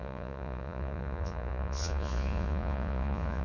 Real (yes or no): no